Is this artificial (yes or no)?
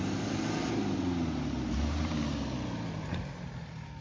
no